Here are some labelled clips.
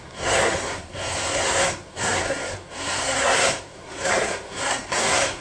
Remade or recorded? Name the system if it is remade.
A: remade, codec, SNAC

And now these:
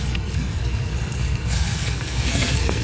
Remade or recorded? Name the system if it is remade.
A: remade, codec, SNAC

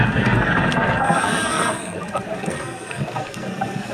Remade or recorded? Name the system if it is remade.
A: remade, codec, SNAC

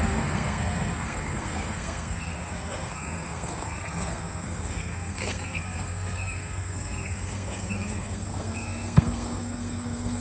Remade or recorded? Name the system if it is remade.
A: remade, codec, SNAC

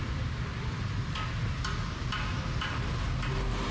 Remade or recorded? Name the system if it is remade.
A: recorded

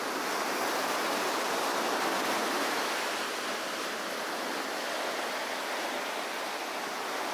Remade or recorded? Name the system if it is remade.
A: recorded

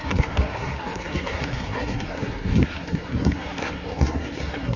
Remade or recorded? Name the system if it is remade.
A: remade, codec, SNAC